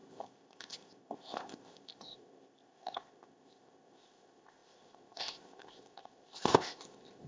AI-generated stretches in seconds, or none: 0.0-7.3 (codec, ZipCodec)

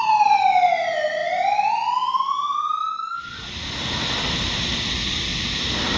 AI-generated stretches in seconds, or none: none

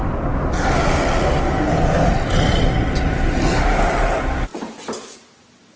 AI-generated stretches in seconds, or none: none

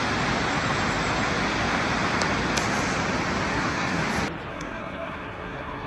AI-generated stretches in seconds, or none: 3.5-4.0 (codec, SNAC); 4.5-5.9

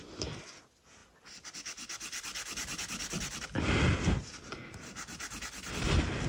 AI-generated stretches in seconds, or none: none